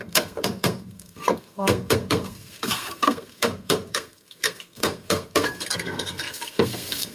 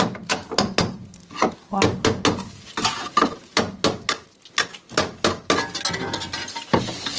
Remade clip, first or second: first